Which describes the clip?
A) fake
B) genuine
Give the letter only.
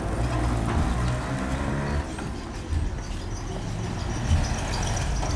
B